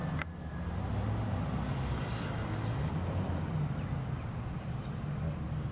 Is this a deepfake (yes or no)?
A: no